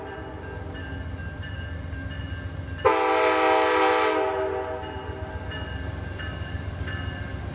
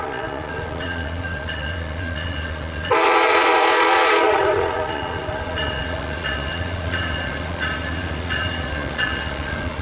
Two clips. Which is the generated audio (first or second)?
second